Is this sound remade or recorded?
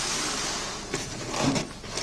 recorded